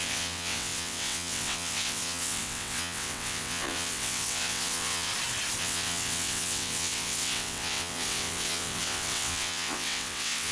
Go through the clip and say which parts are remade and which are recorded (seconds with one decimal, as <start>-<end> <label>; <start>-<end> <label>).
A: 0.0-5.1 remade; 5.1-5.6 recorded; 5.6-10.5 remade